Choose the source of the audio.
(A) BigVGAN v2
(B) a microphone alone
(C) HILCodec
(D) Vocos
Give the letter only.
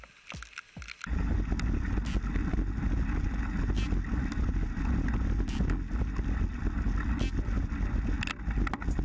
B